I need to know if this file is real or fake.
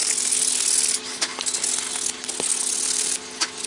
real